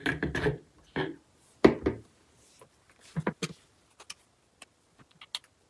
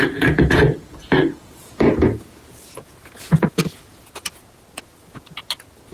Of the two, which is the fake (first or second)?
second